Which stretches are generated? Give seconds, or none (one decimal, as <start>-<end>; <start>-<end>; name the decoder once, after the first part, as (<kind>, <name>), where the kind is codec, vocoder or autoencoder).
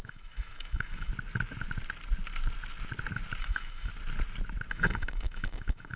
0.0-1.1 (autoencoder, DAC-VAE); 3.4-3.9; 4.7-6.0